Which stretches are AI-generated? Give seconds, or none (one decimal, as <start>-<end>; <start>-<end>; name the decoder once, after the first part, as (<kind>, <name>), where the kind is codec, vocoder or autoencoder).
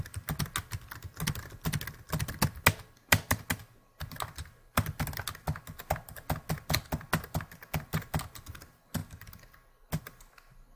none